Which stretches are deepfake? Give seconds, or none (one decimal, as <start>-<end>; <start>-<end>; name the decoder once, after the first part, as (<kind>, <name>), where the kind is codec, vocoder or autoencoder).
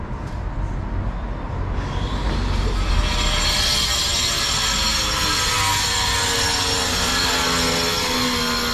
none